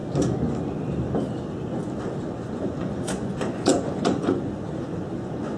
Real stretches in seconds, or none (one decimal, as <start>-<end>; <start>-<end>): 0.0-2.4